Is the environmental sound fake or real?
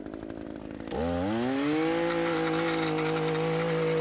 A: real